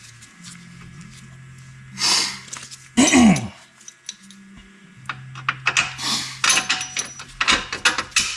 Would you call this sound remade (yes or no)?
no